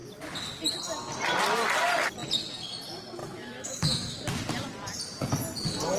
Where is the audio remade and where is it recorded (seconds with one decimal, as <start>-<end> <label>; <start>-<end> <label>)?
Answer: 0.0-3.2 recorded; 3.2-4.2 remade; 4.2-6.0 recorded